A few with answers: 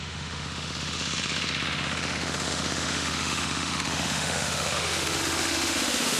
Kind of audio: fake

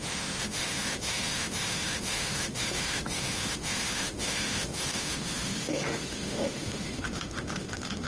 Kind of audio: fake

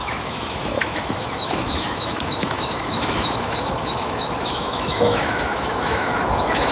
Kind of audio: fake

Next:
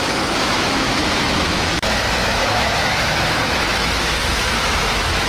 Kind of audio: fake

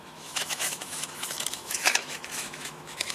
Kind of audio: fake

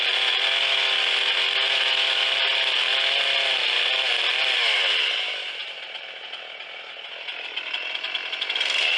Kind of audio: real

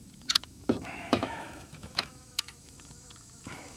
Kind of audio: fake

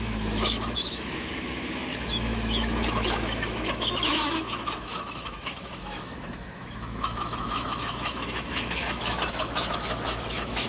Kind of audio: fake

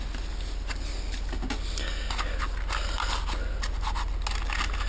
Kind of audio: real